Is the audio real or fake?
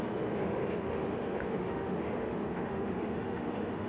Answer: fake